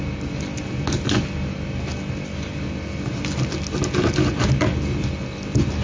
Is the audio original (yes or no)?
yes